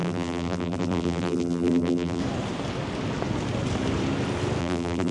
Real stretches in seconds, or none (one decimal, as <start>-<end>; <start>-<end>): 2.2-4.6